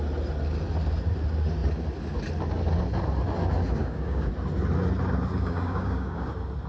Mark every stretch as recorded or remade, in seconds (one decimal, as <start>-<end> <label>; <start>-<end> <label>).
0.0-3.8 recorded; 3.8-4.3 remade; 4.3-5.3 recorded; 5.3-6.3 remade; 6.3-6.7 recorded

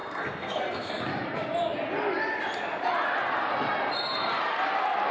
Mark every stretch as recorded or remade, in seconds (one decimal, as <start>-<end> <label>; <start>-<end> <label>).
0.0-0.9 remade; 0.9-5.1 recorded

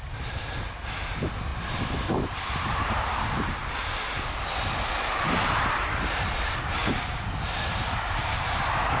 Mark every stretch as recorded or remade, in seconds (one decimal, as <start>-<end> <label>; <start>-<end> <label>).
0.0-1.5 remade; 1.5-2.4 recorded; 2.4-3.6 remade; 3.6-5.9 recorded; 5.9-9.0 remade

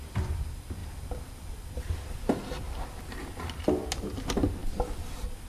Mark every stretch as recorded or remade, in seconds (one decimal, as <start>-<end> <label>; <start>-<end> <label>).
0.0-0.8 recorded; 0.8-2.6 remade; 2.6-5.5 recorded